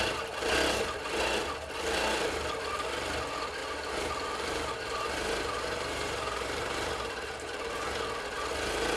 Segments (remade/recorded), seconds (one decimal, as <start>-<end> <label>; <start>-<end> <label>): 0.0-3.6 recorded; 3.6-7.7 remade; 7.7-9.0 recorded